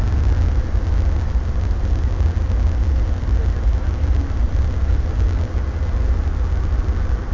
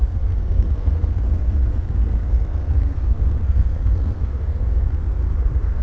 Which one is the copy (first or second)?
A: second